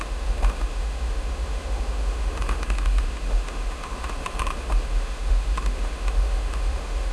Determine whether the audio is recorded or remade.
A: remade